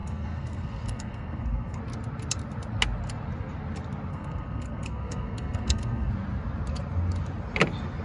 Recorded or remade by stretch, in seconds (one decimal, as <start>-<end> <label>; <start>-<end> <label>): 0.0-1.8 remade; 1.8-4.1 recorded; 4.1-6.1 remade; 6.1-8.0 recorded